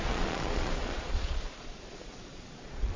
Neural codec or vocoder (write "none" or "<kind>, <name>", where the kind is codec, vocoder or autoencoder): vocoder, Vocos